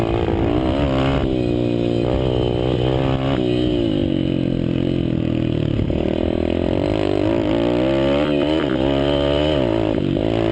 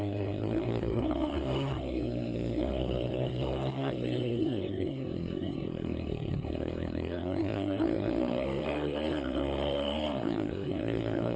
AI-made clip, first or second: second